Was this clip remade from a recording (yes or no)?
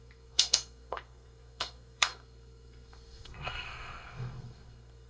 yes